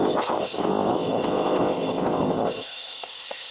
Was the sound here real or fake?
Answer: fake